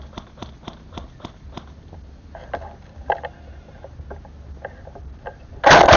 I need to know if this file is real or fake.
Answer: real